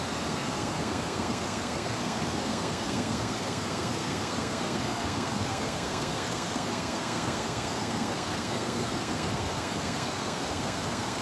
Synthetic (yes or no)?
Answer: yes